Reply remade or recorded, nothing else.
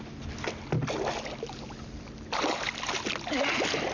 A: recorded